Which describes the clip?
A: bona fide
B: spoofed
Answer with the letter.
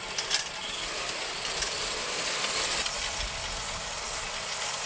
A